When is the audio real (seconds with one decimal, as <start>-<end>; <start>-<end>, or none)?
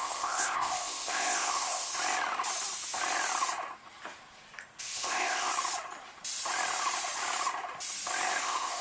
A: 1.9-4.8; 5.5-8.4